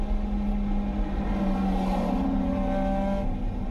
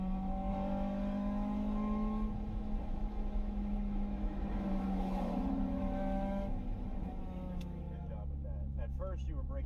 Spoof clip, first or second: second